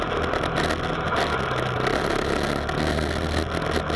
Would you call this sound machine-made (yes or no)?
no